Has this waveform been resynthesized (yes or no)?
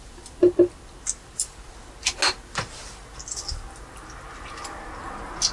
no